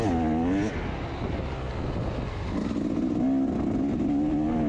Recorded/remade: recorded